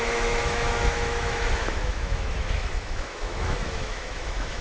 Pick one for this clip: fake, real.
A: fake